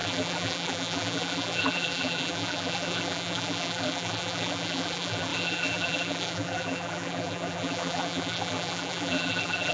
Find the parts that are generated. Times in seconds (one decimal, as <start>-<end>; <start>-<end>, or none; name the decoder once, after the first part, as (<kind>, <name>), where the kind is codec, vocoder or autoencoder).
0.0-9.7 (vocoder, BigVGAN v2)